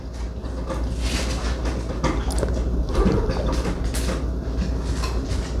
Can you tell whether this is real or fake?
real